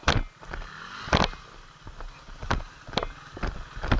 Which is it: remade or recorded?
recorded